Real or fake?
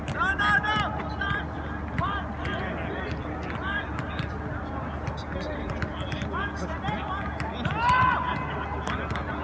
real